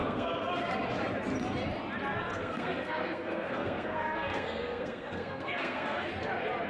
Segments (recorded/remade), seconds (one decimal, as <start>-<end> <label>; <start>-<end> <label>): 0.0-0.5 remade; 0.5-2.3 recorded; 2.3-6.1 remade; 6.1-6.7 recorded